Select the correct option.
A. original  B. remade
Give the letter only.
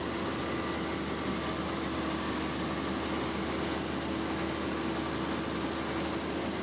A